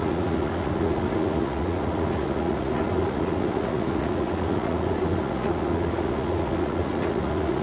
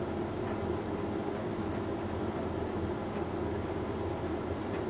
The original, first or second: second